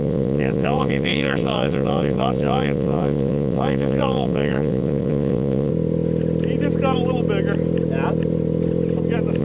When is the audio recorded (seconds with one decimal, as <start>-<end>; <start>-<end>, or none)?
5.7-9.4